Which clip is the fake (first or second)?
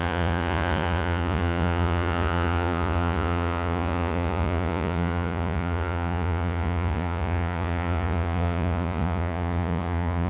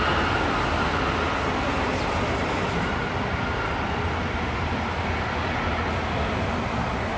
first